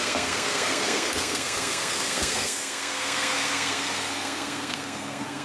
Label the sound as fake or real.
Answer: fake